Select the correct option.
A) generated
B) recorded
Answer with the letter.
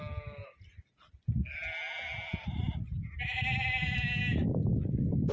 B